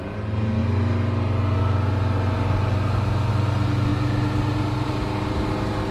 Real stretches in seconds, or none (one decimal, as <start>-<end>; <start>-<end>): 0.0-5.9